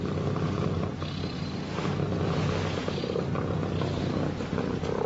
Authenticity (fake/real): real